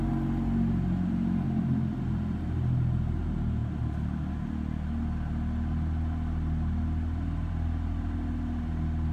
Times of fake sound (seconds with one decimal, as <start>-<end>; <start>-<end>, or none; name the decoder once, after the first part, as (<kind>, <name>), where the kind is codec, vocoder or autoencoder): none